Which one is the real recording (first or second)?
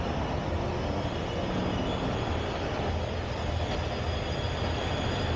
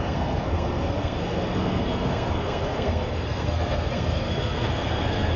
first